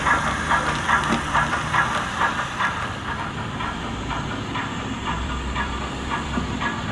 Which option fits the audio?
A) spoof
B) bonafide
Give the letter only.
A